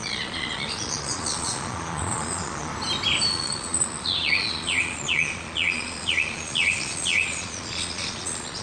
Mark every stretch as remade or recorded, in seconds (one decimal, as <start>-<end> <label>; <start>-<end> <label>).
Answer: 0.0-2.7 remade; 2.7-3.3 recorded; 3.3-8.6 remade